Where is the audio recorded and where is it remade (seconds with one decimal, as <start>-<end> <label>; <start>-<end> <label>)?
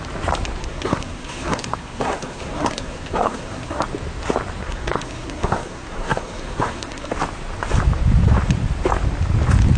0.0-0.6 recorded; 0.6-3.8 remade; 3.8-4.6 recorded; 4.6-7.1 remade; 7.1-9.8 recorded